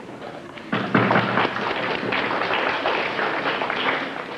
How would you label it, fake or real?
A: real